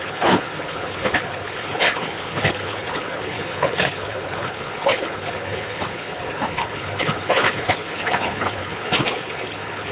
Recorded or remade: remade